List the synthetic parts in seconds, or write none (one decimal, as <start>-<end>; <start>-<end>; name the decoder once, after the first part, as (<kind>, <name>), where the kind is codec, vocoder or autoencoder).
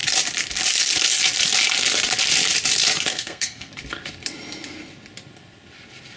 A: 3.1-3.7 (codec, SNAC)